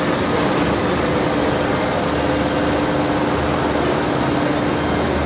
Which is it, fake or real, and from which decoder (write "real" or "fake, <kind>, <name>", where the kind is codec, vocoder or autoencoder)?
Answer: real